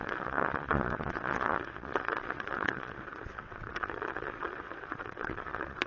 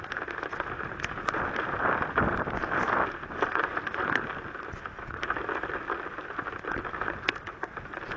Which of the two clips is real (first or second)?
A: second